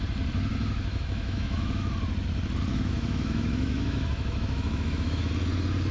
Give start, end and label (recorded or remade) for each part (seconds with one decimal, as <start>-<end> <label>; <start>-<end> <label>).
0.0-0.5 recorded; 0.5-1.9 remade; 1.9-2.7 recorded; 2.7-5.3 remade; 5.3-5.9 recorded